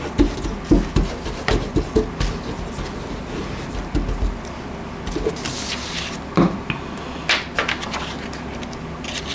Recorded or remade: recorded